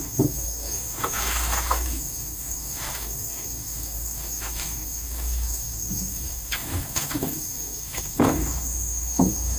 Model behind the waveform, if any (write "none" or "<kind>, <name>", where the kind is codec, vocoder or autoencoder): codec, DAC